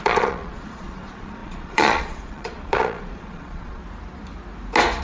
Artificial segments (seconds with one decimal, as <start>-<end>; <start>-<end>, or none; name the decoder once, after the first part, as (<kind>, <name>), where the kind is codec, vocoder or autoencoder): 0.0-3.8 (vocoder, Vocos)